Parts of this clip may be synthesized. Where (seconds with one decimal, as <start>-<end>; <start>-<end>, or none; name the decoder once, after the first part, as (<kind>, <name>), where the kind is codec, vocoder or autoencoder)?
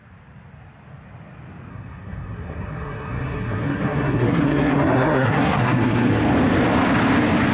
1.7-6.2 (codec, SNAC)